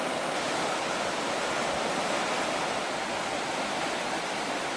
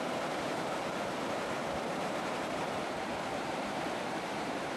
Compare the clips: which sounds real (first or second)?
first